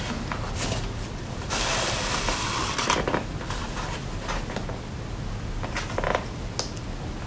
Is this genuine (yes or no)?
yes